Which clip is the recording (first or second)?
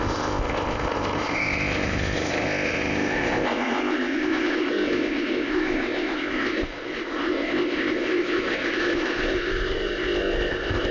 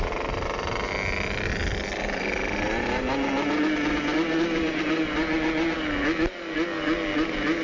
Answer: second